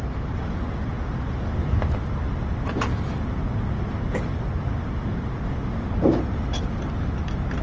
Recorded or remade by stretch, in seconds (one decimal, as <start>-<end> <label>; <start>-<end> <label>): 0.0-7.6 recorded